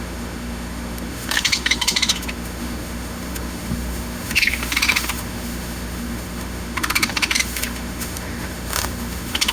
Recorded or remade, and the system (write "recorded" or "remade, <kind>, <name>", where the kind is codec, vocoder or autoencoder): remade, autoencoder, DAC-VAE